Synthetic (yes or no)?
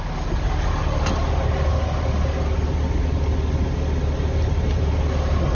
no